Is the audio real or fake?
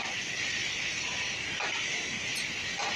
real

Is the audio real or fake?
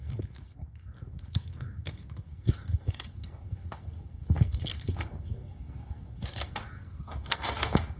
fake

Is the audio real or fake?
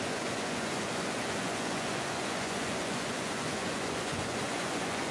fake